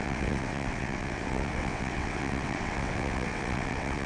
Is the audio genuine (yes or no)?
no